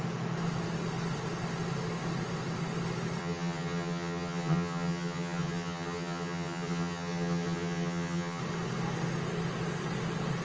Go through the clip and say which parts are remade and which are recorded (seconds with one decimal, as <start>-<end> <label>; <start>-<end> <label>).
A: 0.0-3.2 recorded; 3.2-8.4 remade; 8.4-10.4 recorded